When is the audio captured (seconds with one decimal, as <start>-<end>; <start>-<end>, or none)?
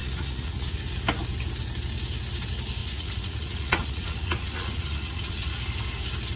0.8-2.8; 5.6-6.4